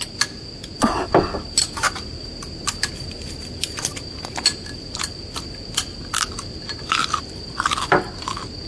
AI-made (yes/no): no